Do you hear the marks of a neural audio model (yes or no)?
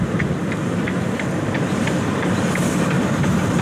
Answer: no